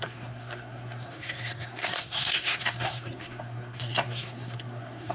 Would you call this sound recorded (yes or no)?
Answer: no